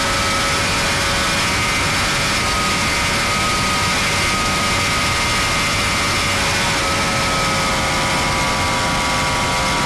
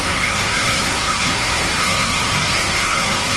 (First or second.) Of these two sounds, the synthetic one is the second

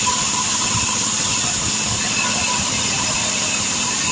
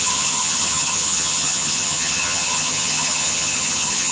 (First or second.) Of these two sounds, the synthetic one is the second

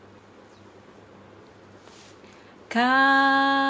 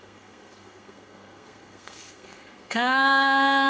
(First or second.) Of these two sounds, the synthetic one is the second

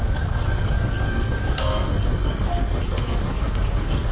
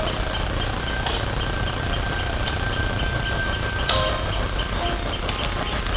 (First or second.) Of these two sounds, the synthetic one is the first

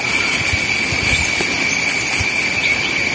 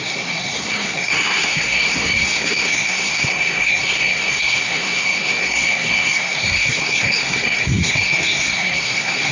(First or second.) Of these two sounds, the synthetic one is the second